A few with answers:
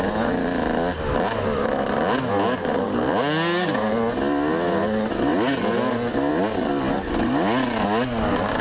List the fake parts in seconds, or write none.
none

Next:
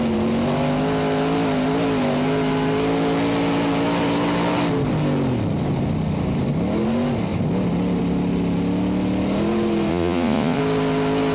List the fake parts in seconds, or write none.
9.9-10.6 (vocoder, Vocos)